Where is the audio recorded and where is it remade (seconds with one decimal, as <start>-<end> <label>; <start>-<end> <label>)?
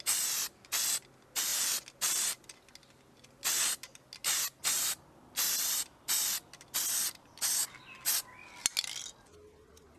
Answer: 0.0-10.0 recorded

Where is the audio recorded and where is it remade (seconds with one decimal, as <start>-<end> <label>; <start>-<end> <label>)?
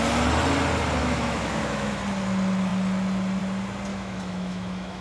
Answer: 0.0-1.0 recorded; 1.0-2.0 remade; 2.0-3.9 recorded; 3.9-5.0 remade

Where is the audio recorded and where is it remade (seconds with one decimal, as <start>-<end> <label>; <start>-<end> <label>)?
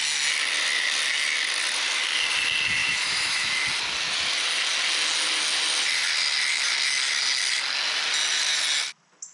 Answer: 0.0-2.8 recorded; 2.8-3.5 remade; 3.5-9.3 recorded